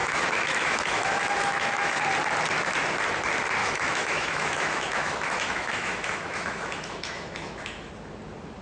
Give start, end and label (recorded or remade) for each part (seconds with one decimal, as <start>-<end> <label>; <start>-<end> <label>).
0.0-2.0 remade; 2.0-3.6 recorded; 3.6-7.9 remade; 7.9-8.6 recorded